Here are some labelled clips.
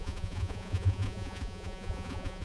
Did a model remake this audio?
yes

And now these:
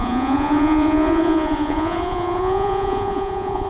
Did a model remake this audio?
yes